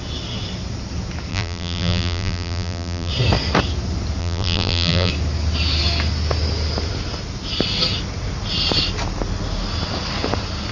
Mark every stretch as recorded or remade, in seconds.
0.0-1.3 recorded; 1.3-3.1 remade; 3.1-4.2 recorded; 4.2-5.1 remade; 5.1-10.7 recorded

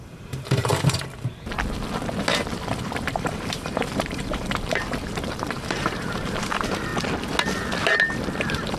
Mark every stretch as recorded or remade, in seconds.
0.0-0.7 remade; 0.7-3.0 recorded; 3.0-6.9 remade; 6.9-8.4 recorded; 8.4-8.8 remade